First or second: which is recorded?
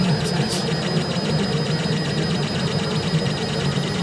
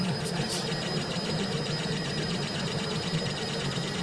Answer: first